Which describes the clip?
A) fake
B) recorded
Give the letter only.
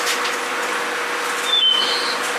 B